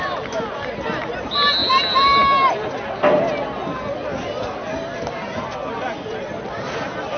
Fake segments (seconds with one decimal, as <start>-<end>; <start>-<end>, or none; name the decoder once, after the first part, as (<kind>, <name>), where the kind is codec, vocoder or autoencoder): none

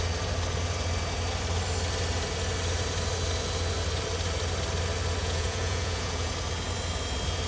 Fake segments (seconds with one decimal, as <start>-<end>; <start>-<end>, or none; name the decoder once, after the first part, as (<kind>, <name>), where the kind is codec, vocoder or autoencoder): 5.2-6.3 (vocoder, Vocos)

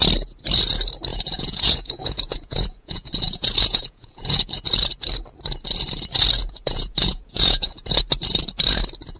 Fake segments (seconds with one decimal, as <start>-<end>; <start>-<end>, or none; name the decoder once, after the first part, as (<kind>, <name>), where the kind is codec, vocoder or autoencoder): 1.1-4.6 (vocoder, Vocos); 6.4-8.0

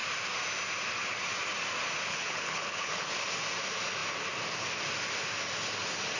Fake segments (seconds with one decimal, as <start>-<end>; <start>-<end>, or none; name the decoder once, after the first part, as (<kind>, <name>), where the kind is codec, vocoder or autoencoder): 2.1-3.1 (codec, HILCodec)

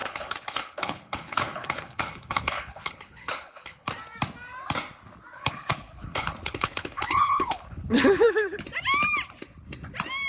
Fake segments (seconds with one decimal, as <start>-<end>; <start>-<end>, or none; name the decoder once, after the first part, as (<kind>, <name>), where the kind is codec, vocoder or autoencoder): 0.0-3.9 (codec, HILCodec); 5.3-8.6

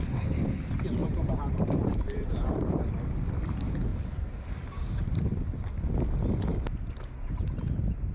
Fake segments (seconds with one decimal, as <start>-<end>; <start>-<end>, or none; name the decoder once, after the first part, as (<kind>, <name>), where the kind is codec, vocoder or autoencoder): 1.0-2.8 (vocoder, BigVGAN v2); 3.9-5.7

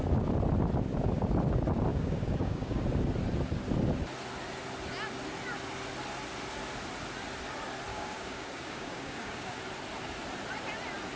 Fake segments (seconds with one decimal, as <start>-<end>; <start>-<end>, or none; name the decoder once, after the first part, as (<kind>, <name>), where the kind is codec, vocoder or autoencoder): 1.9-2.8 (codec, DAC); 7.9-9.6